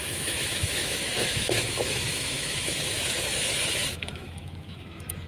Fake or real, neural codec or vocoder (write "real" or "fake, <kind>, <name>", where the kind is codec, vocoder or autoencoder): fake, autoencoder, DAC-VAE